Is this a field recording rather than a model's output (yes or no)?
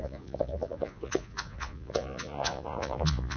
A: no